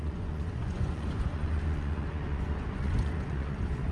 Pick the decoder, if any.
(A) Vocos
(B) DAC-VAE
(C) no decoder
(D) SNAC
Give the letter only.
A